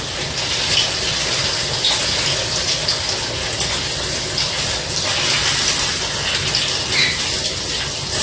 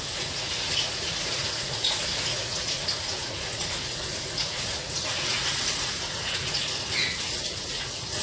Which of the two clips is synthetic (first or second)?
second